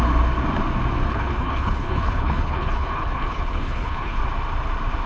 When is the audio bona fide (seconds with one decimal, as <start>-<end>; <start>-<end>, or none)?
0.0-1.1; 4.2-5.1